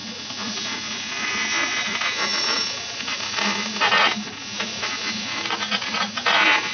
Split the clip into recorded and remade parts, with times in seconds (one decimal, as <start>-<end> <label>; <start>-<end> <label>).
0.0-6.7 remade